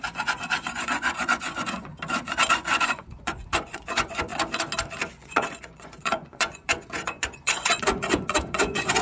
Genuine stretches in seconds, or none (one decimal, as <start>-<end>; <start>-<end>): 1.9-2.5; 4.3-5.1